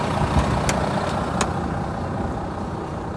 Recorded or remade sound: recorded